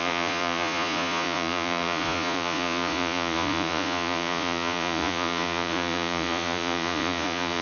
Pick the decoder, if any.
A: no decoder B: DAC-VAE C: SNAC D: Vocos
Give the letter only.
D